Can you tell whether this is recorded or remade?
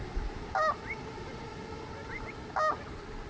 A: recorded